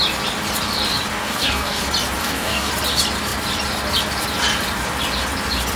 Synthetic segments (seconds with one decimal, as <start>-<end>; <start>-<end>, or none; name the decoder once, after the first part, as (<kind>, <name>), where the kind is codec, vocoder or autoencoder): 1.1-1.8 (codec, DAC); 2.2-2.7